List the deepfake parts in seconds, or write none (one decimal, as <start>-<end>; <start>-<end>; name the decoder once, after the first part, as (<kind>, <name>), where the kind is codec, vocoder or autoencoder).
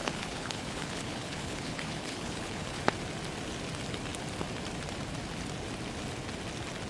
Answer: 0.0-2.8 (codec, HILCodec)